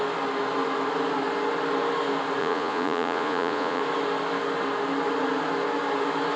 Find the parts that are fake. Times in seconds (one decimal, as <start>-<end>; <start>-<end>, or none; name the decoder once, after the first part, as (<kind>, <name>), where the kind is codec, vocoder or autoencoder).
2.4-3.8 (vocoder, Vocos)